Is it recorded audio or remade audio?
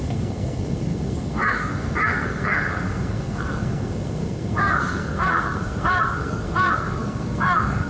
remade